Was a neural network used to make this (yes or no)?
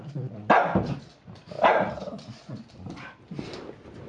no